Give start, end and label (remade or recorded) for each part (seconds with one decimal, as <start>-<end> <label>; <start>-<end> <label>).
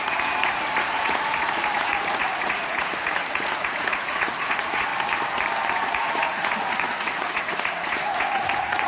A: 0.0-4.9 remade; 4.9-5.7 recorded; 5.7-8.9 remade